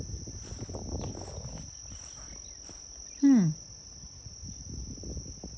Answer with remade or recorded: recorded